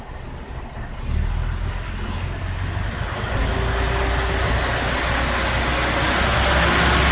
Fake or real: real